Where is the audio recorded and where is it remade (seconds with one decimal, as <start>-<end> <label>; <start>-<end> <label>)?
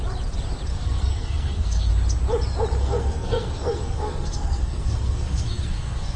0.0-0.7 recorded; 0.7-1.9 remade; 1.9-2.8 recorded; 2.8-6.2 remade